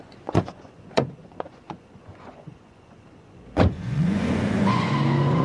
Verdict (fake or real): fake